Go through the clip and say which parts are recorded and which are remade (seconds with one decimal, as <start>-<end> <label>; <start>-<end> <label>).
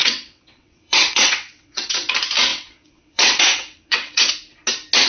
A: 0.0-2.1 remade; 2.1-2.5 recorded; 2.5-4.3 remade; 4.3-5.1 recorded